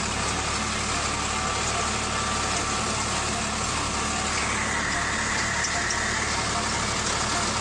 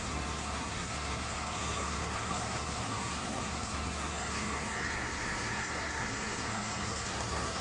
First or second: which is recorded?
first